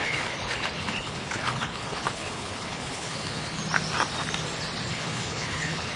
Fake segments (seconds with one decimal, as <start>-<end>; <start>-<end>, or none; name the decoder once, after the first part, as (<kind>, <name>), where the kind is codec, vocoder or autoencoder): 0.0-3.6 (codec, HILCodec); 4.9-6.0